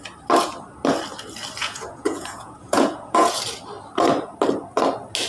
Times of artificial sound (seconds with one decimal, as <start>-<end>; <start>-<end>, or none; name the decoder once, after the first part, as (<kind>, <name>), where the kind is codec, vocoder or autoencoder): 1.6-3.4 (vocoder, Vocos)